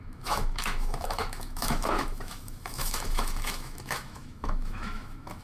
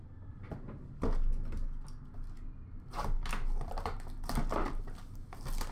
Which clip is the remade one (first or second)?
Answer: first